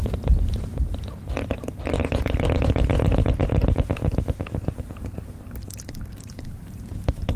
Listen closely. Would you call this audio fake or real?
fake